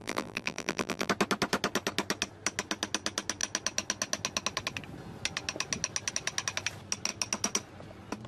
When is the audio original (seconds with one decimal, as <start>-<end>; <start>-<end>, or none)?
1.1-8.3